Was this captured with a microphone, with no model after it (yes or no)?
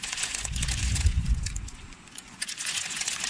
no